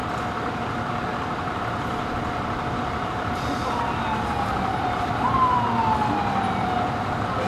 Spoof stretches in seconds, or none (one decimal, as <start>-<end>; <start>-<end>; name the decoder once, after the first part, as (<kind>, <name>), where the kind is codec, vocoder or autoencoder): 0.0-0.7 (vocoder, BigVGAN v2); 1.1-5.6